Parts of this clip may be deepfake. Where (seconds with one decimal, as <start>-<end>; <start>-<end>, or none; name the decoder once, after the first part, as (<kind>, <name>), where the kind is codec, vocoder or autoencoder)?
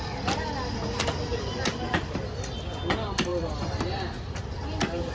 1.3-2.2 (vocoder, BigVGAN v2); 3.3-5.1